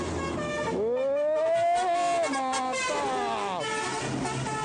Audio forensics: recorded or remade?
recorded